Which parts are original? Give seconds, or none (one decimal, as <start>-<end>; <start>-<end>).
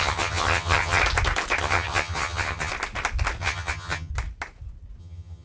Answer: 1.0-1.6; 2.7-3.4; 4.1-5.0